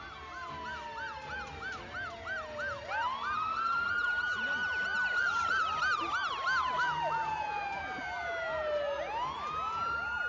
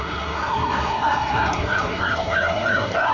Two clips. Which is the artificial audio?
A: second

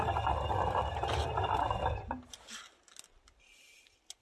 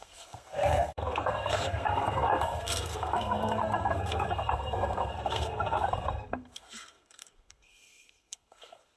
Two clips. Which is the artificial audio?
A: second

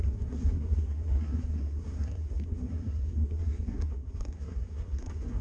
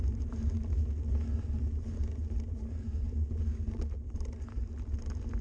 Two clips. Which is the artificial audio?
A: first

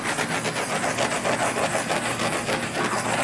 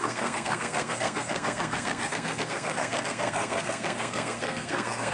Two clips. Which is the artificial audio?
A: second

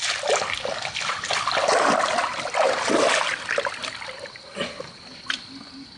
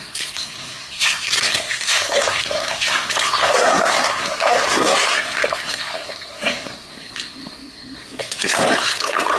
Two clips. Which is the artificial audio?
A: second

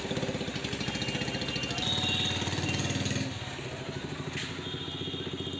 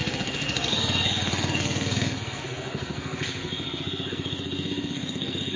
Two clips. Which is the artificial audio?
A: second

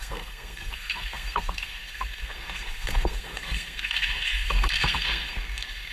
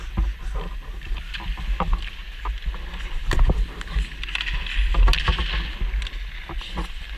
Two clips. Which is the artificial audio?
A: first